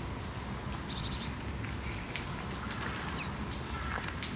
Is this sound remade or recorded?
recorded